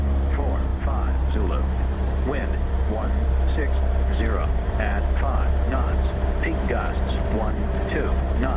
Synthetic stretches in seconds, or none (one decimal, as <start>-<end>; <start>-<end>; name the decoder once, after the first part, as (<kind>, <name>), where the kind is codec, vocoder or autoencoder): 0.0-8.6 (vocoder, BigVGAN v2)

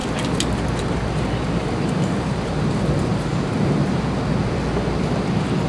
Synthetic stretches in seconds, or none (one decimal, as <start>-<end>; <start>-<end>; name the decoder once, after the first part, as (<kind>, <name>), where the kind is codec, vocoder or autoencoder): 1.6-2.5 (vocoder, BigVGAN v2); 3.1-4.0

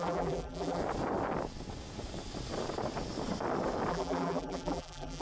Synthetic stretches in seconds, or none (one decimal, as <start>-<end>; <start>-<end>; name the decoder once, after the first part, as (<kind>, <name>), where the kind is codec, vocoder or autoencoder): 0.0-0.8 (vocoder, BigVGAN v2); 3.9-5.2

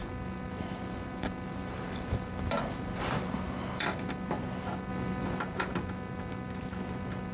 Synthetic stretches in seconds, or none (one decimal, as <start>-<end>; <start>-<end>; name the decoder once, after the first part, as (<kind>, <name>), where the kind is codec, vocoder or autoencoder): 0.0-4.4 (vocoder, BigVGAN v2); 4.9-5.4

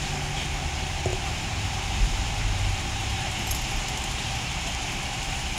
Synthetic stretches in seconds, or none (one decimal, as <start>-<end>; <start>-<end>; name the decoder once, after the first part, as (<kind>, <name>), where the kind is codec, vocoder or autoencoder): 1.1-3.6 (vocoder, BigVGAN v2)

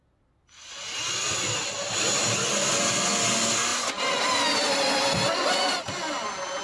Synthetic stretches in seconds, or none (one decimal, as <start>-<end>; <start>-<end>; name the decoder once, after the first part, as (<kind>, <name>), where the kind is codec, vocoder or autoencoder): none

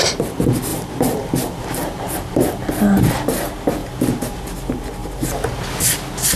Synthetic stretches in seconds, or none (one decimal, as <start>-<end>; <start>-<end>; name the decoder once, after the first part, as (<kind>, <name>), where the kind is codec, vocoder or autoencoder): 0.7-2.6 (vocoder, BigVGAN v2); 3.8-4.4; 5.0-5.6

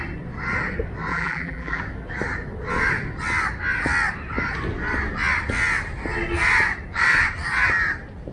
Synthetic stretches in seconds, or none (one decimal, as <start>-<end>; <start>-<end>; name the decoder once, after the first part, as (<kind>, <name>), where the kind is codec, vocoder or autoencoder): 1.1-1.8 (vocoder, BigVGAN v2)